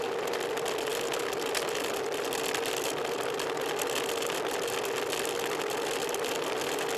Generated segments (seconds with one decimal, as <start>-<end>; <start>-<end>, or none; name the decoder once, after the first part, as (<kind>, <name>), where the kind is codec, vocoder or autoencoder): none